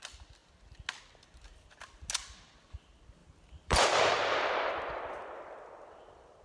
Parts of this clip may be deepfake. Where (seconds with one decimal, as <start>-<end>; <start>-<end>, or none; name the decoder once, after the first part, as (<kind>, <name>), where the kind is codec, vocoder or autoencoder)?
3.2-4.7 (vocoder, BigVGAN v2)